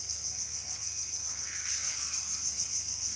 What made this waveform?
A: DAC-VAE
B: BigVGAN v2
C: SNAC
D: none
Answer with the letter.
C